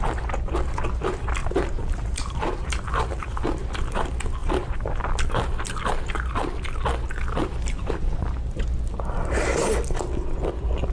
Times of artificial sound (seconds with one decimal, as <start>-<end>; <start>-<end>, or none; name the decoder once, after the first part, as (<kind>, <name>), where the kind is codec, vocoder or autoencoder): 1.4-3.4 (vocoder, BigVGAN v2); 4.4-5.0